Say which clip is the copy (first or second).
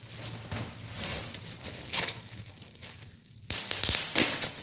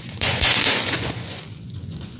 second